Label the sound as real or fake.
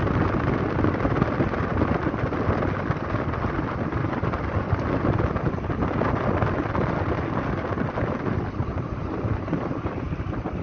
real